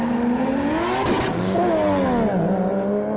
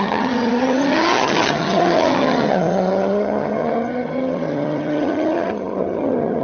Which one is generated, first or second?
second